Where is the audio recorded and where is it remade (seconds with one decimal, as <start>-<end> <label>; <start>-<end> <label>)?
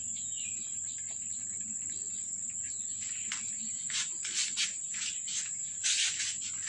0.0-6.7 recorded